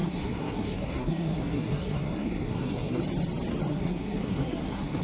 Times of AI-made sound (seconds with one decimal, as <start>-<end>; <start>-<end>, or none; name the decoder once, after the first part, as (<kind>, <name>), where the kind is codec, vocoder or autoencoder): 0.0-3.0 (codec, SNAC); 3.7-5.0